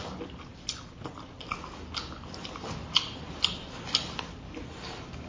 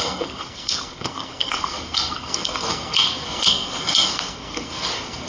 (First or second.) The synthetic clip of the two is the second